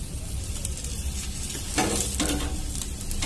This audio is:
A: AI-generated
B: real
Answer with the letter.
B